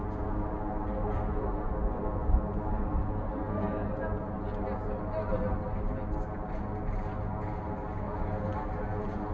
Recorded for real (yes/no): yes